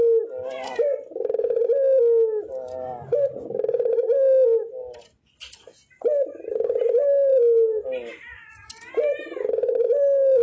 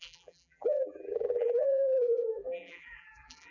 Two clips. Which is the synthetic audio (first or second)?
second